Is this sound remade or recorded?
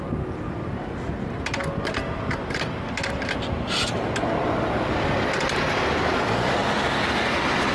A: recorded